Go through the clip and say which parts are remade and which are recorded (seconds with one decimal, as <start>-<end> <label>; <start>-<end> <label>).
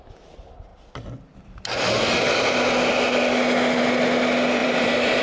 0.0-4.6 recorded; 4.6-5.2 remade